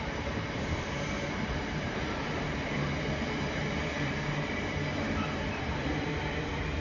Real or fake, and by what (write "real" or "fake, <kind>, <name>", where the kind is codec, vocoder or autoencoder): fake, vocoder, BigVGAN v2